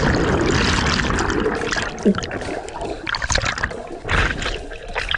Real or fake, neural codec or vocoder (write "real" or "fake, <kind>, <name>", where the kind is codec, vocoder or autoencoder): real